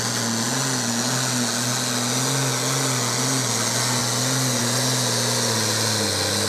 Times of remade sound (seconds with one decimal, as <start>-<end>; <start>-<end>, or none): none